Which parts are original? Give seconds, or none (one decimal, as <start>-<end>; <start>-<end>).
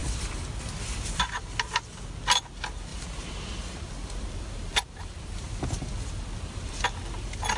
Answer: 1.2-2.9